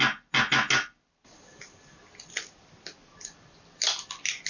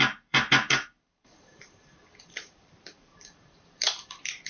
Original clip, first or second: first